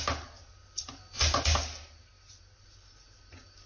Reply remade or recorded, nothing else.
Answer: recorded